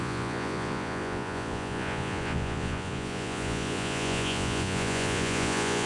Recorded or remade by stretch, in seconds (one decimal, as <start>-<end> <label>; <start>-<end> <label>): 0.0-5.9 remade